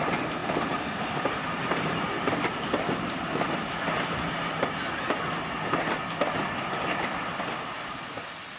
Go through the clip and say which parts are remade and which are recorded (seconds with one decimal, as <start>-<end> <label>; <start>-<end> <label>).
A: 0.0-0.4 recorded; 0.4-2.1 remade; 2.1-8.6 recorded